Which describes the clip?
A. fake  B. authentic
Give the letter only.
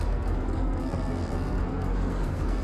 A